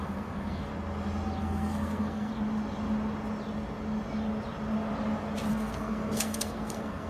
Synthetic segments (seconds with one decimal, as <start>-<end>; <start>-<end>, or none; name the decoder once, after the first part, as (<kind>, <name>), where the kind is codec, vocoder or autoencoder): 0.0-0.7 (codec, SNAC); 1.4-2.3; 5.5-7.1